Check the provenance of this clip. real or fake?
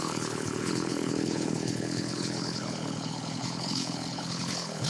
fake